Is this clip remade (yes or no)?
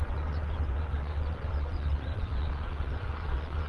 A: yes